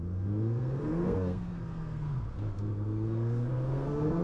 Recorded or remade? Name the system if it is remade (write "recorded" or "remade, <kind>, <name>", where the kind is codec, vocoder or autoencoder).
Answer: remade, codec, SNAC